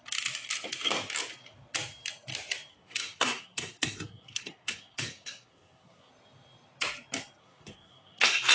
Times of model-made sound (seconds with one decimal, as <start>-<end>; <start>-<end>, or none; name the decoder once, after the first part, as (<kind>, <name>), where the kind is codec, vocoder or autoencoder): 2.7-6.1 (codec, SNAC); 7.4-8.5